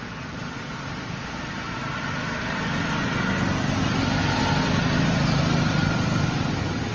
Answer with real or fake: real